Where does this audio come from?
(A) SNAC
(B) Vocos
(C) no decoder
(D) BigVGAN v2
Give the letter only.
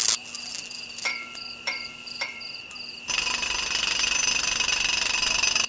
C